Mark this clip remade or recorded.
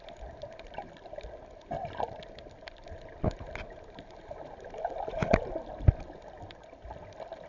recorded